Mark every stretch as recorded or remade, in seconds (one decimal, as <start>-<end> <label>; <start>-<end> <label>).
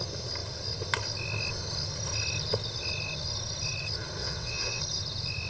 0.0-4.2 recorded; 4.2-4.8 remade; 4.8-5.5 recorded